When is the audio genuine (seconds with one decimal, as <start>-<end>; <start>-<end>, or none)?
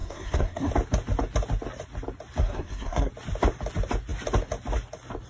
0.7-2.4; 3.1-5.3